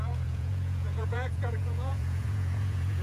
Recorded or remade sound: remade